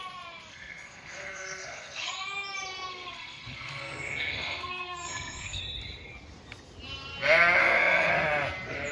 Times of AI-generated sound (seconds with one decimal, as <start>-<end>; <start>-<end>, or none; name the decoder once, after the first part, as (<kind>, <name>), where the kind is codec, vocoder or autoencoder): 0.5-2.1 (codec, SNAC); 2.9-5.6; 7.6-8.1